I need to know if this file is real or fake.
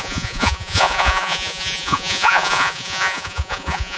fake